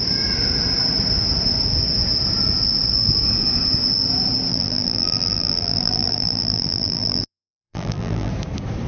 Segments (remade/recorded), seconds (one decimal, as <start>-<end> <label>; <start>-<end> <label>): 0.0-4.5 recorded; 4.5-8.3 remade; 8.3-8.9 recorded